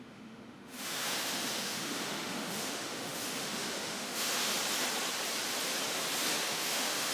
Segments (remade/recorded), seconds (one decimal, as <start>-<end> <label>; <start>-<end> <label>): 0.0-4.5 remade; 4.5-6.5 recorded; 6.5-7.1 remade